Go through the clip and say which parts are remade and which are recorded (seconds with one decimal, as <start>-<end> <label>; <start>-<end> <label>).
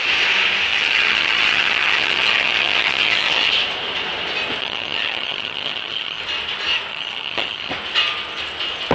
0.0-0.7 recorded; 0.7-3.5 remade; 3.5-4.6 recorded; 4.6-6.2 remade; 6.2-6.9 recorded; 6.9-7.7 remade; 7.7-8.9 recorded